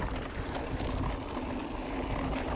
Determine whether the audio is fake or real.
real